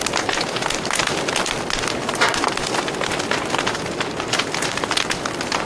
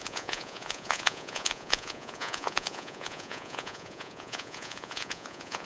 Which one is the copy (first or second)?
second